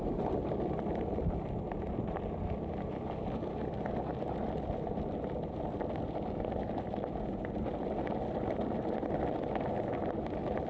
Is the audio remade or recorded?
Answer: recorded